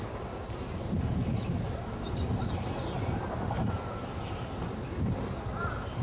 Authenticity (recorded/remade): recorded